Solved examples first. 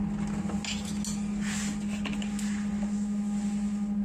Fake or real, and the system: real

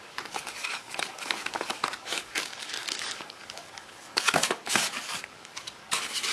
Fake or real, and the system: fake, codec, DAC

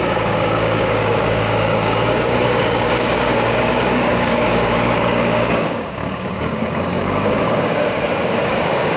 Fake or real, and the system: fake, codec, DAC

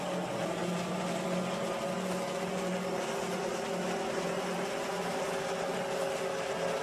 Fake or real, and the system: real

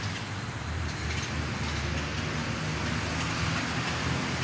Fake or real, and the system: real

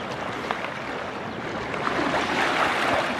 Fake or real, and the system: real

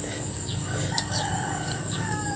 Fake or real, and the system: fake, codec, DAC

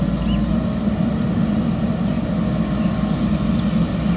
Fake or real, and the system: real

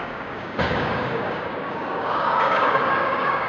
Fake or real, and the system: fake, codec, DAC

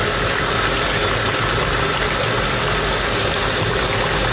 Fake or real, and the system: real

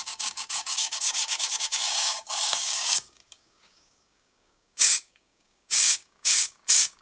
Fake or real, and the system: fake, codec, DAC